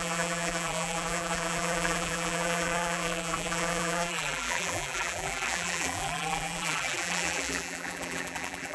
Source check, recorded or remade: remade